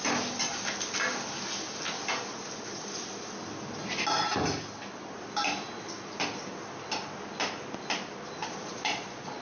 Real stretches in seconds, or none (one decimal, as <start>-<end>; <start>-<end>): 0.0-8.4